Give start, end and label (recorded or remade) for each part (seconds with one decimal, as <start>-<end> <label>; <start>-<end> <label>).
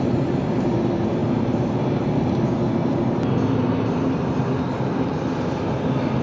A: 0.0-1.2 recorded; 1.2-2.3 remade; 2.3-6.2 recorded